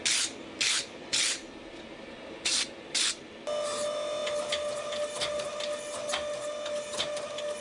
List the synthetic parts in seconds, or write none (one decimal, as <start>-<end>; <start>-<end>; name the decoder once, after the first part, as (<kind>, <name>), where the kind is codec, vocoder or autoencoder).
none